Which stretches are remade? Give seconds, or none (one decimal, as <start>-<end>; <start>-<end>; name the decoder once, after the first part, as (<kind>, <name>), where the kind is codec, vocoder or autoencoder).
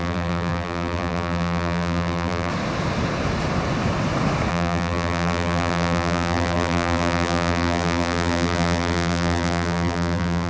0.0-2.5 (vocoder, BigVGAN v2); 4.5-10.5